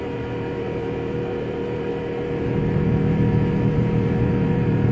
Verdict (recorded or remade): remade